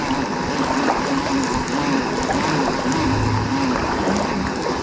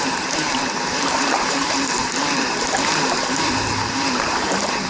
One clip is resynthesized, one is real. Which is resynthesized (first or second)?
second